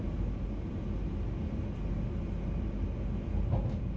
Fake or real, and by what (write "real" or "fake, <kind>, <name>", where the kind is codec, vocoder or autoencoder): real